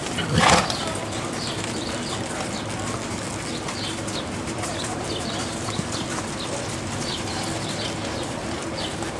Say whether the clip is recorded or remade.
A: remade